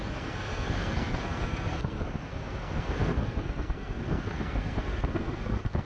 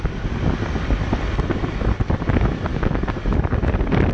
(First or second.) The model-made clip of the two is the first